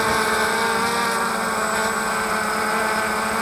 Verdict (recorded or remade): recorded